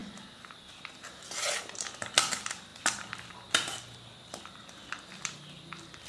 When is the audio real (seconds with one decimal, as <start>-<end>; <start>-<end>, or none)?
0.0-1.4